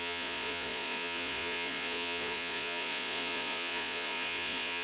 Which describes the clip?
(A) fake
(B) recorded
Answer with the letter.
A